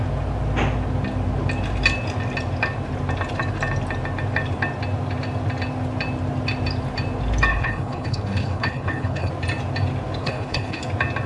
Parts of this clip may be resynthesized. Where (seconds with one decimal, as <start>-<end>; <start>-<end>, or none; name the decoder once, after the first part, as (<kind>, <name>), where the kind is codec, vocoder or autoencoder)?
7.5-9.3 (codec, HILCodec); 10.2-10.8